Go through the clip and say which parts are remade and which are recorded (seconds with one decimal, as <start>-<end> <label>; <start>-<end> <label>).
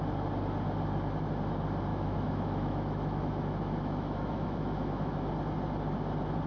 0.0-1.9 recorded; 1.9-5.3 remade; 5.3-6.5 recorded